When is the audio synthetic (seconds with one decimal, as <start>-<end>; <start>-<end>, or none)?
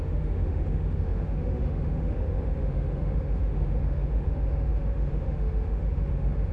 0.0-6.5